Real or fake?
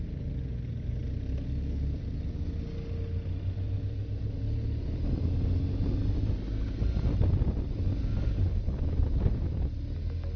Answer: real